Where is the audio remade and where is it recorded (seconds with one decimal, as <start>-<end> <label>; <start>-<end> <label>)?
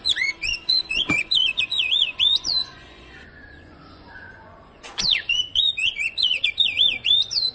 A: 0.0-7.5 remade